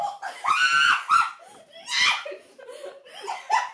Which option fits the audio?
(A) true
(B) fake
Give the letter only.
A